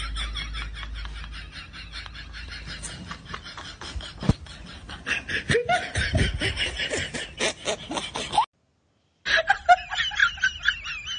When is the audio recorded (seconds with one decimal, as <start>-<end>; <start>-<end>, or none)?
0.0-11.2